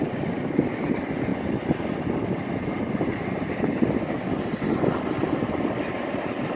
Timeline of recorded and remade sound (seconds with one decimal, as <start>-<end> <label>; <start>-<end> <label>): 0.0-6.6 recorded